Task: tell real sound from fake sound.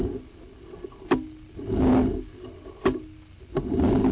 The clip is real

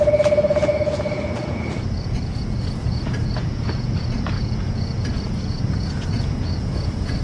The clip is fake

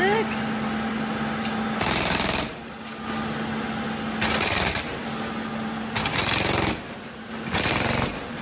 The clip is real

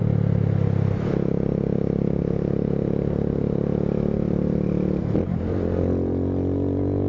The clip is real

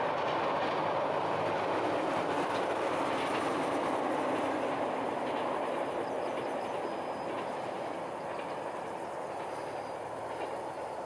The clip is real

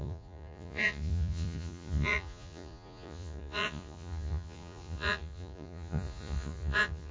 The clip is fake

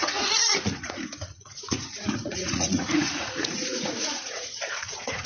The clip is fake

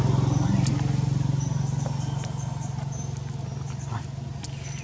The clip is real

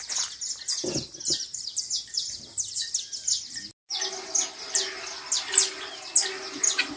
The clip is real